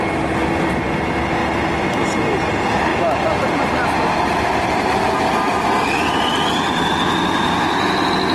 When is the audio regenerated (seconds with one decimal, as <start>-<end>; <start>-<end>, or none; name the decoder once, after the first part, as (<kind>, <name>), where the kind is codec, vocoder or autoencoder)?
none